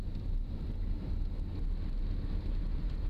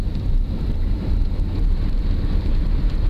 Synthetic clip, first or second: second